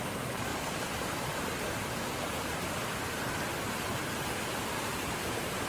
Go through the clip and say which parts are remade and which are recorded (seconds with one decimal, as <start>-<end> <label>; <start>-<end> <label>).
0.0-0.5 remade; 0.5-1.9 recorded; 1.9-3.5 remade; 3.5-5.0 recorded; 5.0-5.7 remade